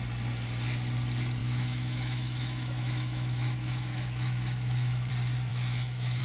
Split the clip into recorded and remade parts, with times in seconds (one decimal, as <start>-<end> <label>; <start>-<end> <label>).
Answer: 0.0-1.4 recorded; 1.4-5.1 remade; 5.1-5.5 recorded; 5.5-6.2 remade